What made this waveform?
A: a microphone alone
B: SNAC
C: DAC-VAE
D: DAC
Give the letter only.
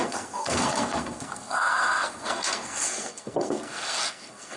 B